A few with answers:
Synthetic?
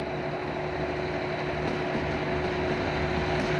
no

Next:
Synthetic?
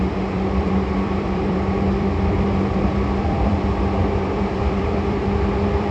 yes